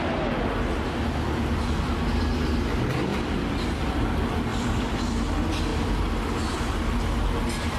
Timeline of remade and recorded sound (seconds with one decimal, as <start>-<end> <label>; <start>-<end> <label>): 0.0-5.7 recorded; 5.7-6.9 remade; 6.9-7.8 recorded